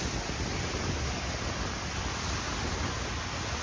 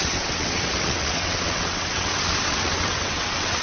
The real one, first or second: first